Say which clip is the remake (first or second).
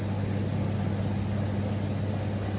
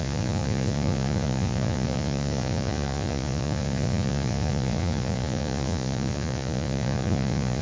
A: second